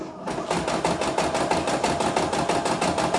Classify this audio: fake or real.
real